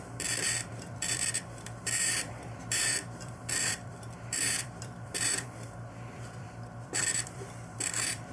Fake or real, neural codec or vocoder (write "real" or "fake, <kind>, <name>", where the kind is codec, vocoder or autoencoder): fake, vocoder, BigVGAN v2